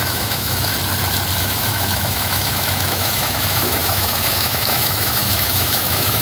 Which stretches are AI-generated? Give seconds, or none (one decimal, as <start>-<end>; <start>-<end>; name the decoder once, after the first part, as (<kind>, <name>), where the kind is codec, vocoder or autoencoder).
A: 0.0-0.7 (autoencoder, DAC-VAE); 1.4-6.2

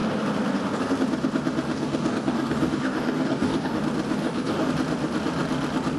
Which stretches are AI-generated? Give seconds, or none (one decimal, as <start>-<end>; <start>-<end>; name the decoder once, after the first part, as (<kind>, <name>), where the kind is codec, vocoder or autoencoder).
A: 1.7-3.8 (codec, DAC); 4.2-4.7

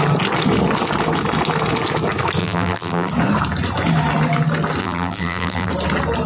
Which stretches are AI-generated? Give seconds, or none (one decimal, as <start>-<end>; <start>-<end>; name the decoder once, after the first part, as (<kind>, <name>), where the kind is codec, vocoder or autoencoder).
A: 2.4-3.1 (vocoder, BigVGAN v2); 4.8-5.7